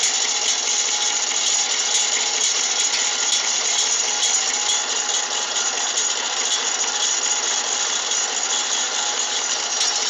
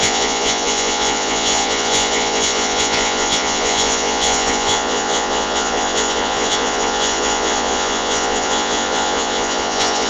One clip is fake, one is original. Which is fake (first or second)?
second